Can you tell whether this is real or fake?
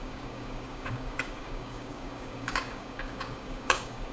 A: fake